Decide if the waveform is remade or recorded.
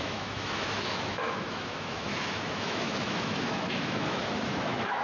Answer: remade